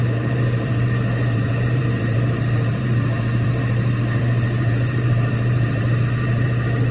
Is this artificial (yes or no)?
yes